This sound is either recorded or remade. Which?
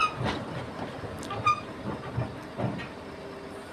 recorded